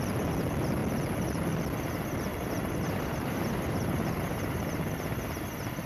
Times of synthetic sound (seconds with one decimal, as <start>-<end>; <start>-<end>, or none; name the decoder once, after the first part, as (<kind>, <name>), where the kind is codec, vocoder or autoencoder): 2.3-5.4 (vocoder, BigVGAN v2)